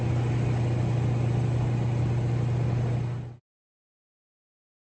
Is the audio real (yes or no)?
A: yes